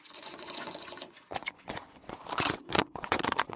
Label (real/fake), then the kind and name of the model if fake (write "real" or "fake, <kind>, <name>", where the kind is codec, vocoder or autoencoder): fake, vocoder, Vocos